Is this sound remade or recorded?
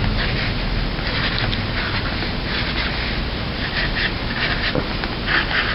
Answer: recorded